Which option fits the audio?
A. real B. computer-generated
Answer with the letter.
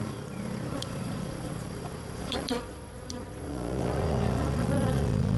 B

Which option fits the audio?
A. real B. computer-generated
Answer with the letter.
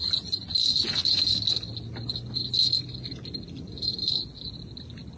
A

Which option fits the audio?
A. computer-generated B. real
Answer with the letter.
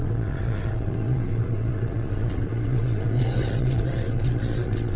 A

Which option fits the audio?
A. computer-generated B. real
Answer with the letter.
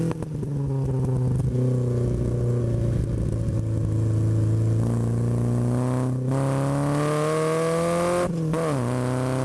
B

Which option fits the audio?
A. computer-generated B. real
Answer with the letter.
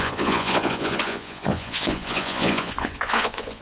A